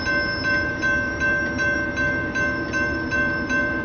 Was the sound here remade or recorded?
remade